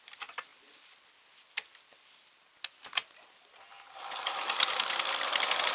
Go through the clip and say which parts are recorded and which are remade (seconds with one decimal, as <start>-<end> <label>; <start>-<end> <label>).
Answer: 0.0-5.7 recorded